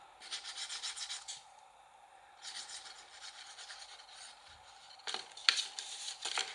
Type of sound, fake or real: real